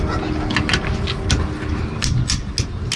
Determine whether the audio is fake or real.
real